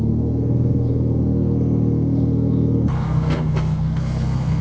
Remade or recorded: remade